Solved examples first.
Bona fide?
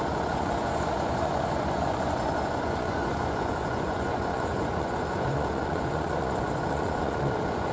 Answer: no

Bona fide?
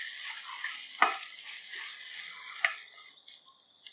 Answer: yes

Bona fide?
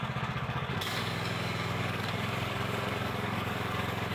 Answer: no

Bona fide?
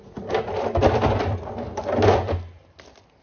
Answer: yes